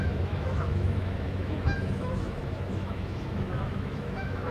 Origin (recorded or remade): remade